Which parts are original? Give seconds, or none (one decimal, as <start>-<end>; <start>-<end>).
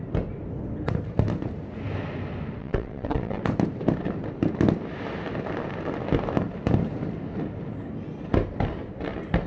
0.0-2.6; 3.4-9.5